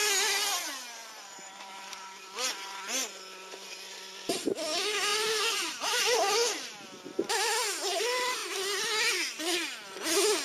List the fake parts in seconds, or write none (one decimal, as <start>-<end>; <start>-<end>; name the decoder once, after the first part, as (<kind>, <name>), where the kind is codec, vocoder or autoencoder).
1.0-2.2 (vocoder, BigVGAN v2); 5.1-6.0

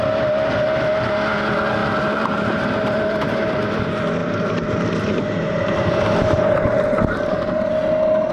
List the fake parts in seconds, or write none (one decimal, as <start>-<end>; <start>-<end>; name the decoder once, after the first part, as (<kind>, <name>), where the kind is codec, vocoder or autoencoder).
1.8-3.7 (vocoder, BigVGAN v2); 4.2-7.7

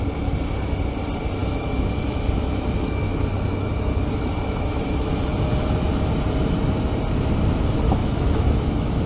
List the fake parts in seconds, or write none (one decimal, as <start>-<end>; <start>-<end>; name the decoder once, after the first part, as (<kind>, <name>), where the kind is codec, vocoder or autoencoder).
1.4-5.2 (autoencoder, DAC-VAE); 8.0-9.1

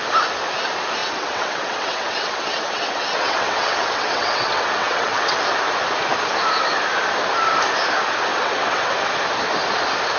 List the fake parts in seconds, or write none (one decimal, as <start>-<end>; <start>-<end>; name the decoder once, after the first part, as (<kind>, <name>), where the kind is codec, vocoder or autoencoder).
1.0-5.4 (vocoder, WaveNeXt); 8.3-8.9

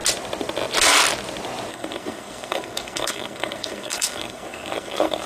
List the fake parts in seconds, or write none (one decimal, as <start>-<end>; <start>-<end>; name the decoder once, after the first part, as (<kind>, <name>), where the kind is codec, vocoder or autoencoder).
1.7-5.3 (codec, SNAC)

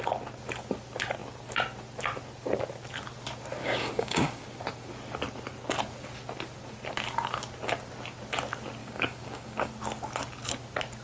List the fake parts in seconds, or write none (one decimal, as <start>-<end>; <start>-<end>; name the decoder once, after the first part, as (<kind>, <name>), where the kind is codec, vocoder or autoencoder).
3.6-4.4 (codec, DAC); 8.8-9.7

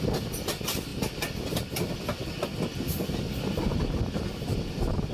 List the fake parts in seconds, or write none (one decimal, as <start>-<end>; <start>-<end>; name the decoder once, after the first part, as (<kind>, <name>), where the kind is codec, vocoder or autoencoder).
none

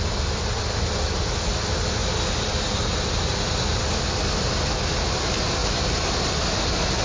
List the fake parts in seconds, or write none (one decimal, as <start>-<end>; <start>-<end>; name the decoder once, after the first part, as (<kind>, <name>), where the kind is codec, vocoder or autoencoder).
none